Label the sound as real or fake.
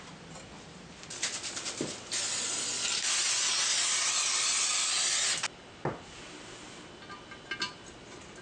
real